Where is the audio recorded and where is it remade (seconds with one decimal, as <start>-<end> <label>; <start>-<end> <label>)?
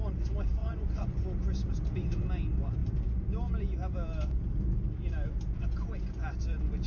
0.0-0.6 recorded; 0.6-1.2 remade; 1.2-6.9 recorded